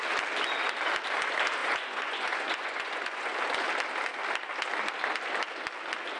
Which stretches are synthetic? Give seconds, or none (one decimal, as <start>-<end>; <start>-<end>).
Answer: 1.6-3.3